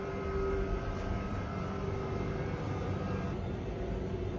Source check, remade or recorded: remade